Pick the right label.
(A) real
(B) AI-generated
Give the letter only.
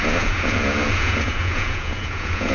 B